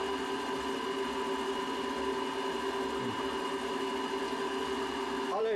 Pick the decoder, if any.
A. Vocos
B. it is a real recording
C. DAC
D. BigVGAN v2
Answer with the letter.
B